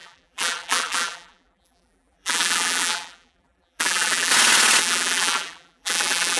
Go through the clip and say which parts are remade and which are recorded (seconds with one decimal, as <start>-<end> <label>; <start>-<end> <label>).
0.0-4.3 remade; 4.3-4.8 recorded; 4.8-6.4 remade